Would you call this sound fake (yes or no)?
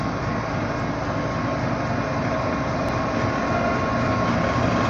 no